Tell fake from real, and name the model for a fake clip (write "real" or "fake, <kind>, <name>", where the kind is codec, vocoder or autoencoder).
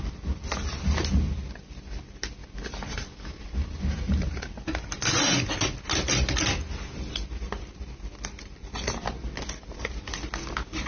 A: real